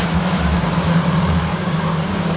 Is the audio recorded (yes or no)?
no